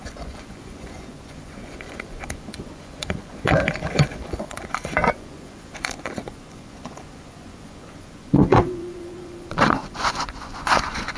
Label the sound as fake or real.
fake